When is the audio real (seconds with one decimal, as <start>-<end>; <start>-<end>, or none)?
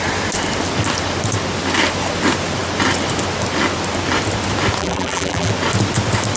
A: 0.0-4.8; 5.5-6.4